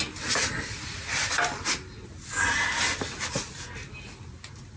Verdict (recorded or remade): recorded